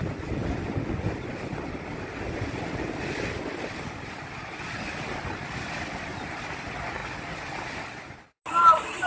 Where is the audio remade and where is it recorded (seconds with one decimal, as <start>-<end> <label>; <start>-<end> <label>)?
0.0-9.1 recorded